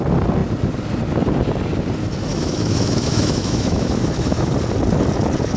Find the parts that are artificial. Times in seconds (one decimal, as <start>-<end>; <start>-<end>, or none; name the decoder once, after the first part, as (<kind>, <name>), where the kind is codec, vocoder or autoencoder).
2.3-4.5 (autoencoder, DAC-VAE)